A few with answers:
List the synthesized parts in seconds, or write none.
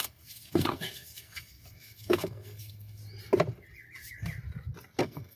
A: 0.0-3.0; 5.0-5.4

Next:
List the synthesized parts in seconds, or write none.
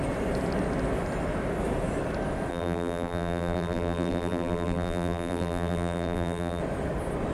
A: 2.5-6.6